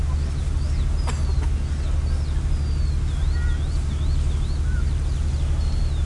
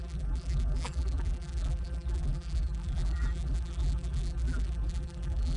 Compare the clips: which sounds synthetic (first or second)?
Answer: second